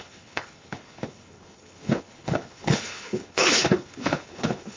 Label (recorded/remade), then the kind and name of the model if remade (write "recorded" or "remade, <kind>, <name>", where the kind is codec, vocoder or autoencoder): remade, codec, HILCodec